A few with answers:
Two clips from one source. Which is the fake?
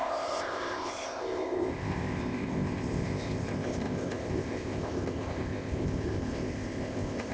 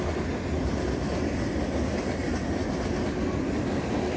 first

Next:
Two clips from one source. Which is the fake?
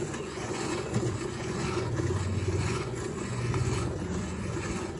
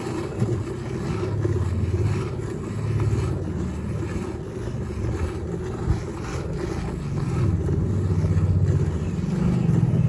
first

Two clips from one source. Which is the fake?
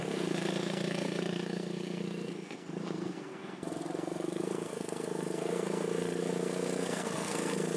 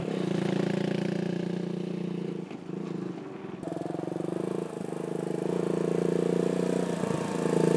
first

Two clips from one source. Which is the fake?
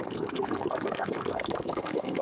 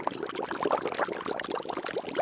first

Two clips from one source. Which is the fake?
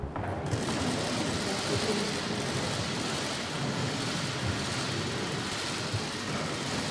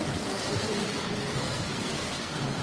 second